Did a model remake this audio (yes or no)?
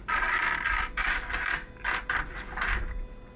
no